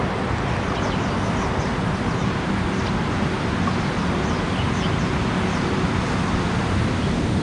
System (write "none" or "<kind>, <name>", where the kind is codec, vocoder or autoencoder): none